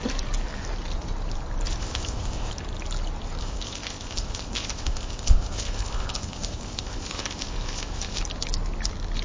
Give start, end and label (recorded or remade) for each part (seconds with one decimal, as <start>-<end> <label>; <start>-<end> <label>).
0.0-1.8 recorded; 1.8-2.5 remade; 2.5-3.4 recorded; 3.4-8.2 remade; 8.2-9.2 recorded